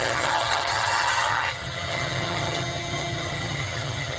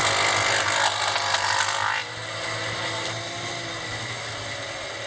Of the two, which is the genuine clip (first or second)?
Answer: second